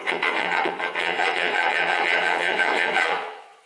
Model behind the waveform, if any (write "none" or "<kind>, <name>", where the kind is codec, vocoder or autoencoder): vocoder, Vocos